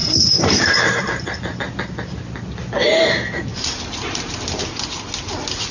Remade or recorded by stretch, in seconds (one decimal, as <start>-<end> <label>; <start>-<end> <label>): 0.0-1.0 remade; 1.0-3.5 recorded; 3.5-4.6 remade; 4.6-5.7 recorded